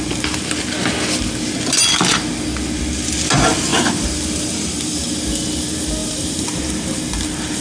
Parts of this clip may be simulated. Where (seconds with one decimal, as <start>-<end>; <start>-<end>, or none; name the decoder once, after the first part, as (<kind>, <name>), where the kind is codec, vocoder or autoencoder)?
3.7-5.3 (vocoder, BigVGAN v2); 6.0-6.9